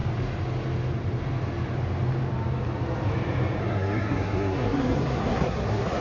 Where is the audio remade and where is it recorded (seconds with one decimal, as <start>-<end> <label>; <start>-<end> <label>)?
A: 0.0-3.6 recorded; 3.6-6.0 remade